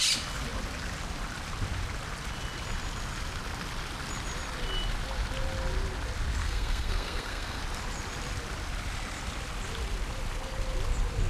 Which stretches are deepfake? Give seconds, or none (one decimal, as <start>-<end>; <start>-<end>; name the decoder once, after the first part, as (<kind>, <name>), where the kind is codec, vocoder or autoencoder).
6.4-7.6 (codec, SNAC)